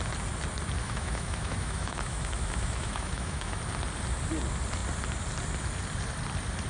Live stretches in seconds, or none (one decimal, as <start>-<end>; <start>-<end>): 0.0-0.8; 3.6-6.7

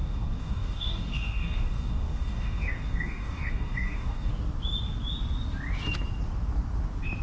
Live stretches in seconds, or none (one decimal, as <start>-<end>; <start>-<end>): 4.3-7.2

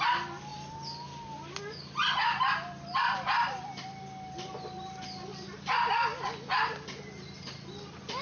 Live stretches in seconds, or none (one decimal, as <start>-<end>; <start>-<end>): 0.0-8.2